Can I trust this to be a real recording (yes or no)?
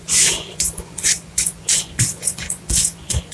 no